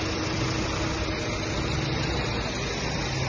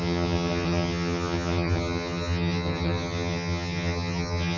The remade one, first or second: second